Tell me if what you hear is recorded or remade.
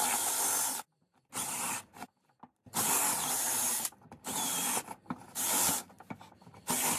remade